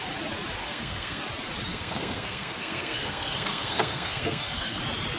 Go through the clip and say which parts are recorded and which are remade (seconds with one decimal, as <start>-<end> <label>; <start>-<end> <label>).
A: 0.0-0.6 recorded; 0.6-1.2 remade; 1.2-1.7 recorded; 1.7-4.8 remade; 4.8-5.2 recorded